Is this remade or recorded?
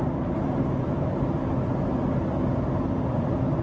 recorded